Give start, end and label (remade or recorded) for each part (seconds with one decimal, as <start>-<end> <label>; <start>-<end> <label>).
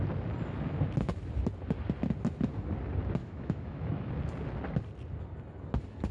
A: 0.0-3.2 recorded; 3.2-4.1 remade; 4.1-6.1 recorded